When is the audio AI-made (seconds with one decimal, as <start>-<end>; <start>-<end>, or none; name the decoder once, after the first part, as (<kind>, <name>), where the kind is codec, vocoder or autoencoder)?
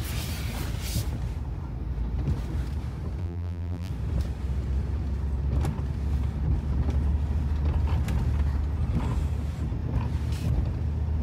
3.2-3.9 (vocoder, BigVGAN v2)